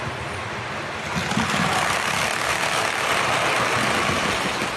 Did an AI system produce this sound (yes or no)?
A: no